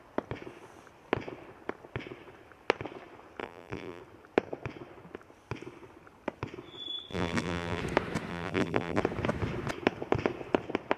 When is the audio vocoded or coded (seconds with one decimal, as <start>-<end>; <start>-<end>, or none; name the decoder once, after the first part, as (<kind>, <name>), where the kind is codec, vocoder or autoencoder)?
3.4-4.0 (vocoder, BigVGAN v2); 7.1-7.8; 8.3-9.0